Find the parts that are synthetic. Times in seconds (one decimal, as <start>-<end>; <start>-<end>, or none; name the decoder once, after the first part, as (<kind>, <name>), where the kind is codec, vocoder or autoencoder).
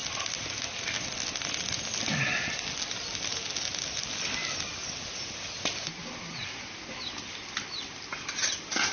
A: none